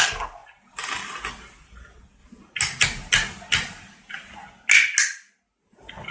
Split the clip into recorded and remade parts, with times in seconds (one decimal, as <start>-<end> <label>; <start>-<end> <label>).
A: 0.0-6.1 recorded